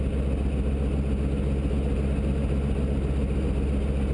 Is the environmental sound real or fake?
real